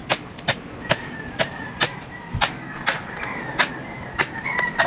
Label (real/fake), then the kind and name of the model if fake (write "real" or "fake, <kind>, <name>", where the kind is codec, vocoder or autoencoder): real